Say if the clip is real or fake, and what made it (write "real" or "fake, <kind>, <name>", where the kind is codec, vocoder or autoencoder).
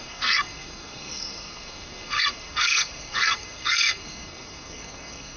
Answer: fake, codec, SNAC